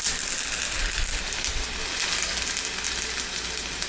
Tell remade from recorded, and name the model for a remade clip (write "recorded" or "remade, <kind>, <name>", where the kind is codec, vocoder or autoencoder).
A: recorded